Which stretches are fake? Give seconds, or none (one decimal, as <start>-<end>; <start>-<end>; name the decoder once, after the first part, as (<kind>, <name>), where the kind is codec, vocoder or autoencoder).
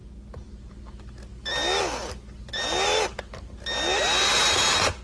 none